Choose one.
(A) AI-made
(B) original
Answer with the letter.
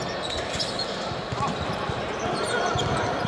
B